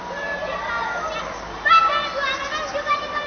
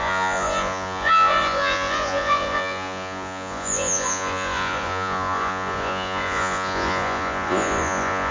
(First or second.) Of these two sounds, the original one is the first